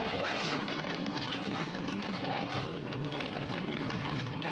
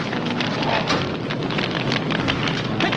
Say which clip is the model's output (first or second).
first